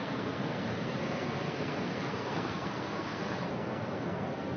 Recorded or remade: remade